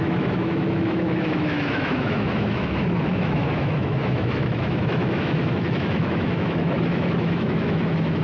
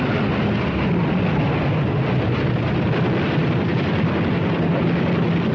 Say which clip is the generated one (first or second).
first